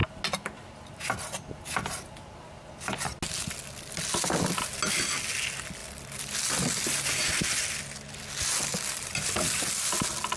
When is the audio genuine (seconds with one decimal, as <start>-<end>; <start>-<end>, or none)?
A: 0.0-5.8; 7.1-8.7; 9.6-10.4